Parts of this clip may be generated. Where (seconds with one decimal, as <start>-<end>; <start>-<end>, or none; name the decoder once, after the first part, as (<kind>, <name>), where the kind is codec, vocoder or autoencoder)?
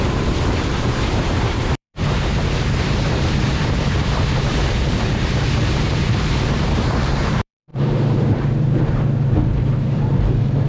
0.0-10.7 (vocoder, BigVGAN v2)